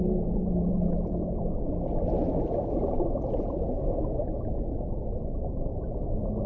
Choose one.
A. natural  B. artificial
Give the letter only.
A